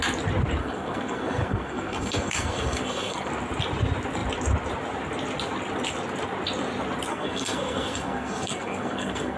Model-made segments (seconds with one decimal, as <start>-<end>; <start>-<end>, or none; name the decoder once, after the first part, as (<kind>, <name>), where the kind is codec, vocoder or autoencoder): 0.6-3.3 (codec, SNAC); 7.1-9.4